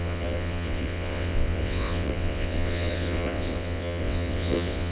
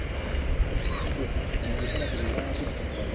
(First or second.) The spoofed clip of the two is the first